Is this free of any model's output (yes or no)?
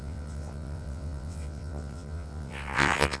no